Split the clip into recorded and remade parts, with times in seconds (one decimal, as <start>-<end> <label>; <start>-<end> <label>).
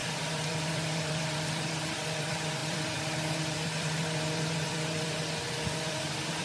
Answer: 0.0-6.4 remade